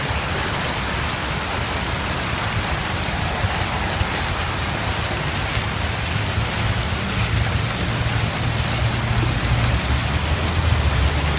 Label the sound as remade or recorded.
recorded